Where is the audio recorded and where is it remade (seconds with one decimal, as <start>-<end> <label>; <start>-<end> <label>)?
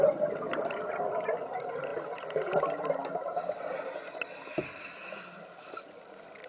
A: 0.0-6.5 recorded